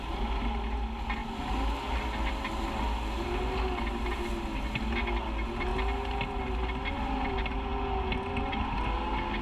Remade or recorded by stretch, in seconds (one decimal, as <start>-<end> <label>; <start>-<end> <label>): 0.0-9.4 recorded